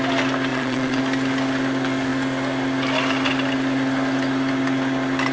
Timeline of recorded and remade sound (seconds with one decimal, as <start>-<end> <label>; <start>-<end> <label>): 0.0-0.5 recorded; 0.5-1.0 remade; 1.0-5.3 recorded